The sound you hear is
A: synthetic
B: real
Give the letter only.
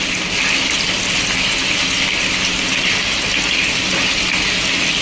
B